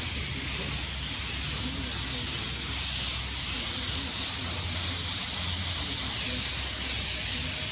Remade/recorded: recorded